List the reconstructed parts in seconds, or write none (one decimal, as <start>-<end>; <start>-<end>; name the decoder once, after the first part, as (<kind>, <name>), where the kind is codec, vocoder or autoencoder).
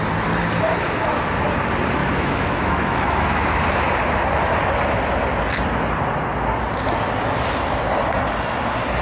2.0-3.6 (autoencoder, DAC-VAE)